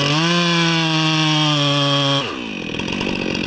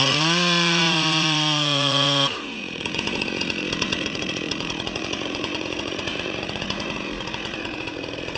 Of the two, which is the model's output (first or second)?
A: second